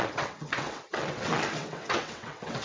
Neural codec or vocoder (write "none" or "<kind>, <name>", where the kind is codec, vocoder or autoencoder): vocoder, WaveNeXt